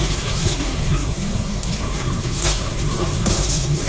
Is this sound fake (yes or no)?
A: yes